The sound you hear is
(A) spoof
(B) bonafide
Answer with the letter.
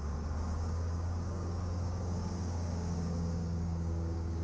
A